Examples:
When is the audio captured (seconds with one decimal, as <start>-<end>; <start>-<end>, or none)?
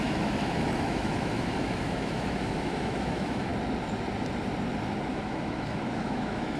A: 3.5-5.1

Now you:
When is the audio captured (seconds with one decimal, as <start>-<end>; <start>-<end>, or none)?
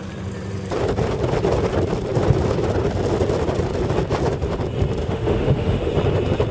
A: 0.0-5.0; 5.9-6.5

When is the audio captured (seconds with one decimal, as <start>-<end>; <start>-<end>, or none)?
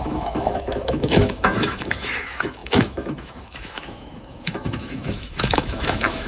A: none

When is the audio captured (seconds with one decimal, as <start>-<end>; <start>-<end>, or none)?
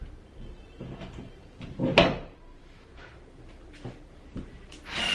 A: 0.0-2.6; 3.1-5.1